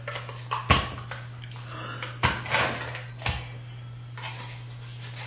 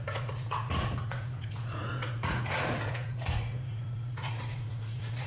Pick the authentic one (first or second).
first